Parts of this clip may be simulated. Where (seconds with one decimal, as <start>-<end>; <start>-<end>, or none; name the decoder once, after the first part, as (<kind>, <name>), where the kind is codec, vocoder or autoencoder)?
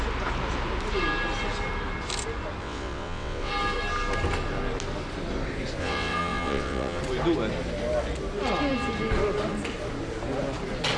2.6-3.5 (vocoder, WaveNeXt); 5.8-7.0